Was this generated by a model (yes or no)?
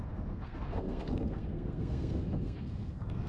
yes